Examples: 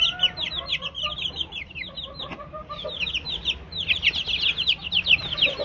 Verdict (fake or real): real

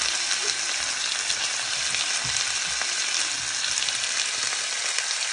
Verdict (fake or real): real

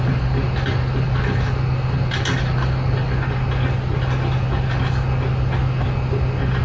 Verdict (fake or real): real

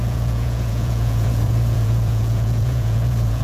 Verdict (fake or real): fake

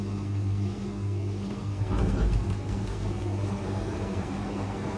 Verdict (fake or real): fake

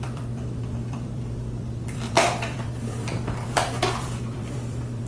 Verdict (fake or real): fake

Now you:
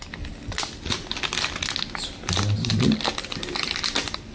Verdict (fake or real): real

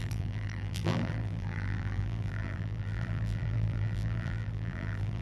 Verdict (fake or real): fake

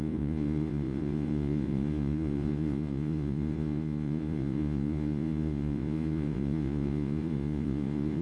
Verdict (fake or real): fake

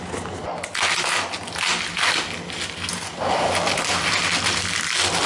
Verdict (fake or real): real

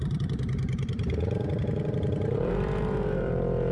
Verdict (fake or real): fake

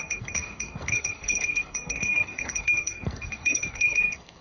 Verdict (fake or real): fake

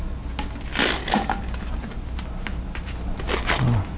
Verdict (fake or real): real